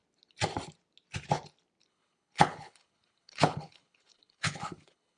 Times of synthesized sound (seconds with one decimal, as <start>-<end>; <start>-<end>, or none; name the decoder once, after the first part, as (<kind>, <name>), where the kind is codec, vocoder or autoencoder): 1.9-5.2 (codec, HILCodec)